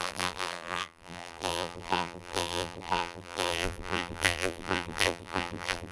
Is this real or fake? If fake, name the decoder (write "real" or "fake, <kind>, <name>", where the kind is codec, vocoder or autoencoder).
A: fake, vocoder, BigVGAN v2